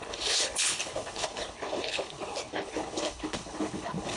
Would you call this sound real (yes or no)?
no